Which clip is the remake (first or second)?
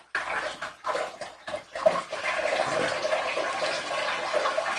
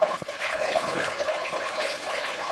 second